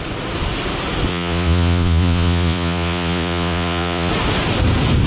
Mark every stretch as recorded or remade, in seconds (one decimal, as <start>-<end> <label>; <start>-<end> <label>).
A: 0.0-1.1 recorded; 1.1-4.1 remade; 4.1-5.1 recorded